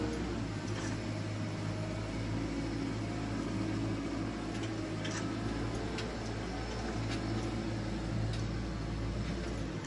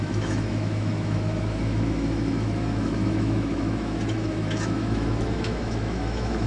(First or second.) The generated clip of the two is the second